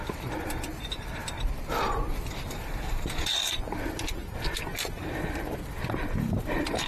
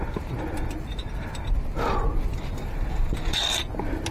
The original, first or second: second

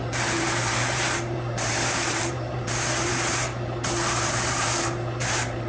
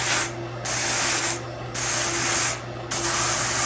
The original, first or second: second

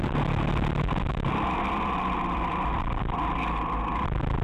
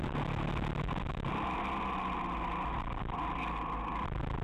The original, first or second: second